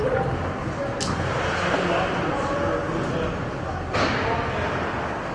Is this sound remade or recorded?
recorded